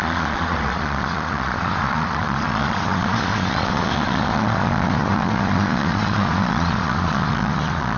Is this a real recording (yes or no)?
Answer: no